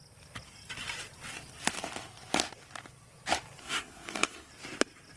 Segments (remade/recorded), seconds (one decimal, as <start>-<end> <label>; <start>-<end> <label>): 0.0-3.6 recorded; 3.6-4.5 remade; 4.5-5.2 recorded